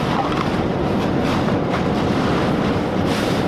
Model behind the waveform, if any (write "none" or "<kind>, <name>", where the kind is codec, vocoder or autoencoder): vocoder, BigVGAN v2